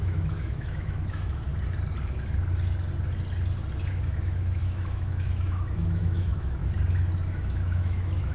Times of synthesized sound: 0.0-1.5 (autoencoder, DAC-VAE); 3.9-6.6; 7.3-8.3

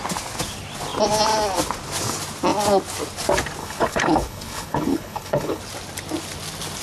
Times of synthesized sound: 3.6-5.6 (codec, HILCodec)

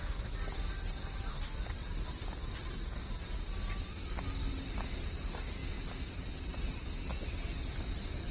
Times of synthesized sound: none

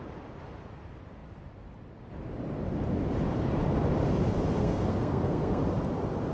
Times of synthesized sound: 4.6-5.6 (codec, SNAC)

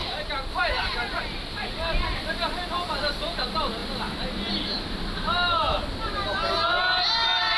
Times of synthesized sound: none

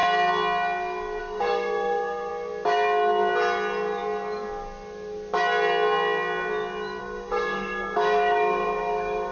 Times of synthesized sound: 1.2-2.3 (codec, DAC); 7.0-9.3